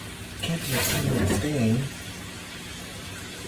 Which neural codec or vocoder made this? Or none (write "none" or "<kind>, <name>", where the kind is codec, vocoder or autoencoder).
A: none